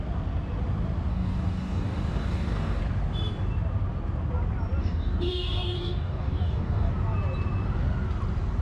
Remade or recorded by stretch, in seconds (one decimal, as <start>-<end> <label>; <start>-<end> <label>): 0.0-1.1 recorded; 1.1-2.8 remade; 2.8-4.8 recorded; 4.8-6.9 remade; 6.9-8.6 recorded